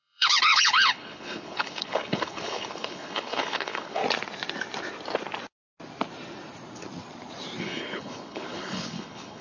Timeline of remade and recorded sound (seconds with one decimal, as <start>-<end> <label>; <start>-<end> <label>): 0.0-4.0 remade; 4.0-7.6 recorded; 7.6-9.4 remade